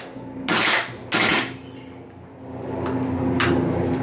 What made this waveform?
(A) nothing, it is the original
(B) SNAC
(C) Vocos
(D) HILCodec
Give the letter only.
A